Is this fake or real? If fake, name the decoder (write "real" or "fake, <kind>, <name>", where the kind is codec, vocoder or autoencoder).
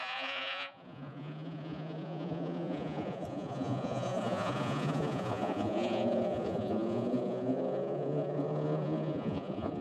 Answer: fake, vocoder, Vocos